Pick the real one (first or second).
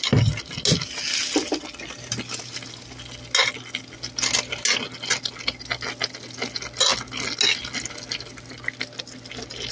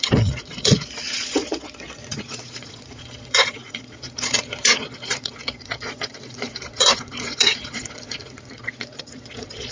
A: first